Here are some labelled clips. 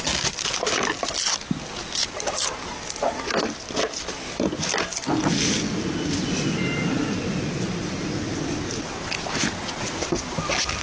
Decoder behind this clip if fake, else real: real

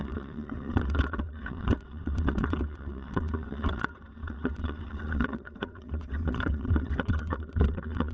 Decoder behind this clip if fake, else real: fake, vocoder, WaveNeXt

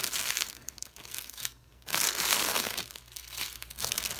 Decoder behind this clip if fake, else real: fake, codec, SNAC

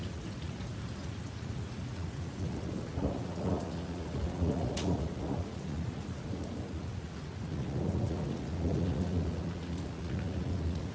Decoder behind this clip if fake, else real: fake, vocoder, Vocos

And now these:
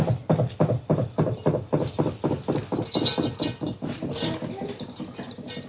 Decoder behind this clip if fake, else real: real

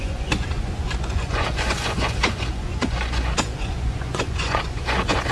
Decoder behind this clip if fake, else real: fake, vocoder, Vocos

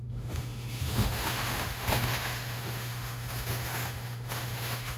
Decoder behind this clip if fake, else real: fake, autoencoder, DAC-VAE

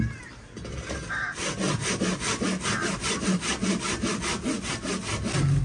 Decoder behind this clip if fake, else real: real